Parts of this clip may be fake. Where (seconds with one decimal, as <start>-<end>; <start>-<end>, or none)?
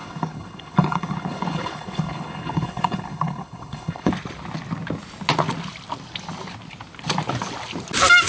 0.0-4.1